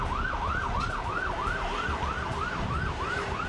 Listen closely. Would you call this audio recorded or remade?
recorded